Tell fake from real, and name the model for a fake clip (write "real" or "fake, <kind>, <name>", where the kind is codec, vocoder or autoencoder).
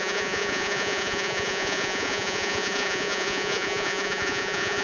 fake, vocoder, Vocos